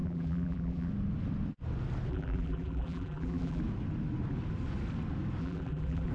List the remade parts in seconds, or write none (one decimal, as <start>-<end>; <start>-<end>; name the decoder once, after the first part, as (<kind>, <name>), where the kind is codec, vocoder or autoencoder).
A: 0.0-0.9 (vocoder, BigVGAN v2); 2.1-3.6; 5.4-6.1